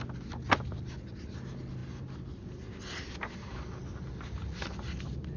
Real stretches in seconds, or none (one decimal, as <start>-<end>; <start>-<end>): 0.0-5.4